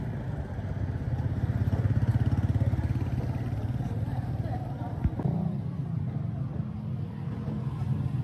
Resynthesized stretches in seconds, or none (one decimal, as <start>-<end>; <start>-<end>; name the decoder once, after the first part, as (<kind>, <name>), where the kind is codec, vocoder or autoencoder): none